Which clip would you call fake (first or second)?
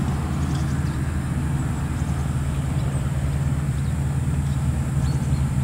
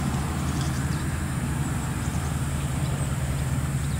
second